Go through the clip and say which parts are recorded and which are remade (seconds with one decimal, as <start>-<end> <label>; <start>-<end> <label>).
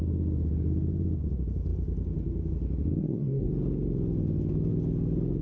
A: 0.0-3.0 recorded; 3.0-3.5 remade; 3.5-5.4 recorded